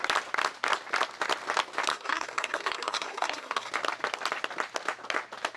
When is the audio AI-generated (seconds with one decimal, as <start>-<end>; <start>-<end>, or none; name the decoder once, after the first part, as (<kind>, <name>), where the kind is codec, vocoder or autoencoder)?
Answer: 1.9-3.7 (codec, SNAC)